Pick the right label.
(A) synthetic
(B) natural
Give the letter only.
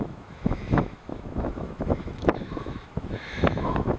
A